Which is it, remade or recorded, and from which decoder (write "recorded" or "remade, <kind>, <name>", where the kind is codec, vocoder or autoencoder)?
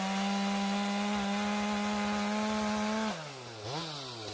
recorded